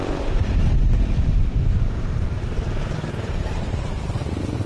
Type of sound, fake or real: fake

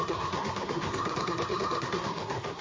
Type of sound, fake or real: fake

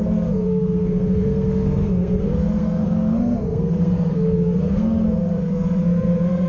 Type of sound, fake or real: fake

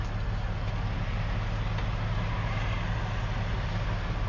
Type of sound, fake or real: real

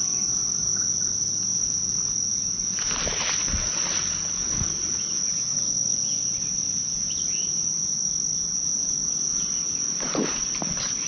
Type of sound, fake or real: real